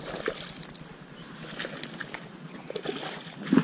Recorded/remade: remade